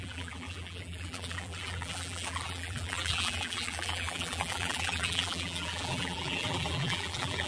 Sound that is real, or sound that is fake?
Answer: fake